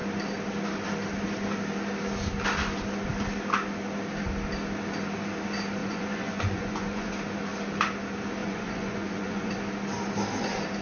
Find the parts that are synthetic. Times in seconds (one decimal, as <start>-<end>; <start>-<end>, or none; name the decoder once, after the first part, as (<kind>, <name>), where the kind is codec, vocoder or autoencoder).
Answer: 5.8-7.1 (vocoder, Vocos); 8.4-9.5